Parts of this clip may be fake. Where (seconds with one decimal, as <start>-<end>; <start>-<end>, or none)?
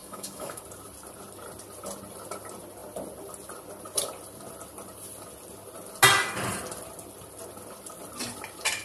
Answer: 0.0-0.6